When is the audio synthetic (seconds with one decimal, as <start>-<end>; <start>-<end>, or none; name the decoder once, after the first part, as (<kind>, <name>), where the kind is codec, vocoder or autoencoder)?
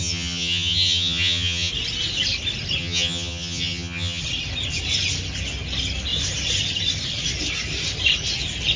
0.0-1.7 (vocoder, HiFi-GAN); 2.8-4.2